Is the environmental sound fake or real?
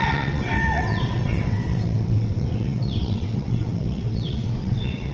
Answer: fake